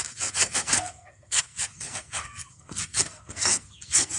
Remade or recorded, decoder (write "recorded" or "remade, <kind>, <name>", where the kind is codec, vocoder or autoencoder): remade, codec, SNAC